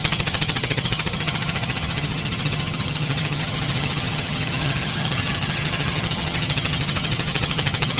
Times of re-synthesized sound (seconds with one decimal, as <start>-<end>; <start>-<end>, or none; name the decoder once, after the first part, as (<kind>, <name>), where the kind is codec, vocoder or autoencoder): 0.0-8.0 (vocoder, HiFi-GAN)